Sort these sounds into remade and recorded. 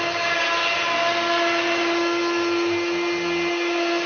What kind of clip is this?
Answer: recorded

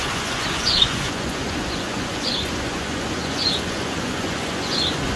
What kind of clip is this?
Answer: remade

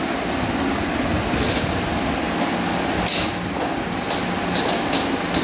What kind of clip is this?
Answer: recorded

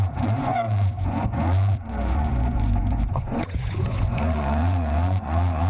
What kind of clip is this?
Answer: remade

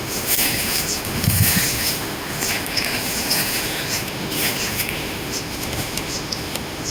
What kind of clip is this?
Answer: remade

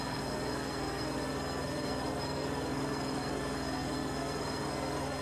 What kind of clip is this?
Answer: remade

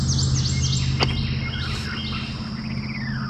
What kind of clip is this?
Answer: recorded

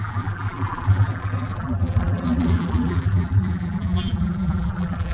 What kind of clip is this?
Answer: remade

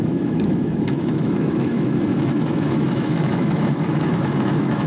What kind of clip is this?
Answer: remade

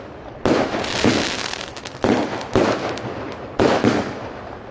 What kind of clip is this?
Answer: recorded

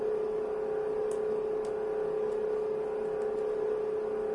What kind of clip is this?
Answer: recorded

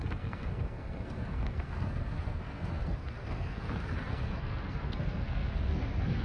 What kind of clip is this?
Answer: remade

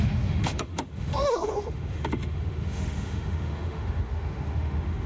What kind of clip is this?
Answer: remade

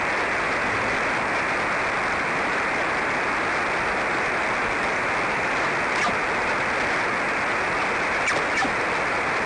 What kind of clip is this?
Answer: recorded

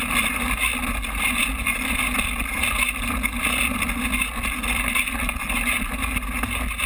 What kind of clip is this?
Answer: recorded